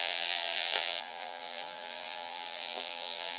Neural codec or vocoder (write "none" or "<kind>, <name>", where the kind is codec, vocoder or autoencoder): vocoder, BigVGAN v2